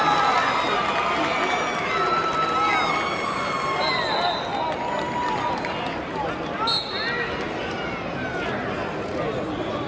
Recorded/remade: recorded